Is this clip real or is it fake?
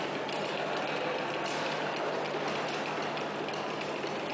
real